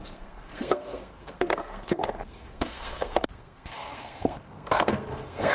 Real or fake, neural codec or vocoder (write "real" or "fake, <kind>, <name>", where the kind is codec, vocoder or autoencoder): fake, codec, SNAC